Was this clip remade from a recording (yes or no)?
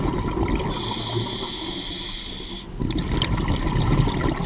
no